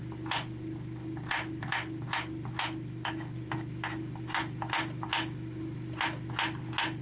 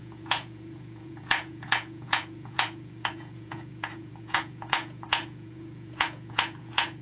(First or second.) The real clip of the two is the first